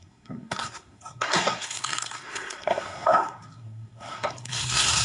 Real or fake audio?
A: fake